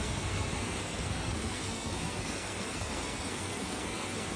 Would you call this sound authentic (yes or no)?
no